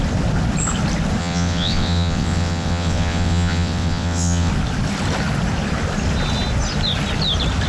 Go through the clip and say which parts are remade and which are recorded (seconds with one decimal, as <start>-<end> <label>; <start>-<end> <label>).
0.0-1.2 recorded; 1.2-4.5 remade; 4.5-7.7 recorded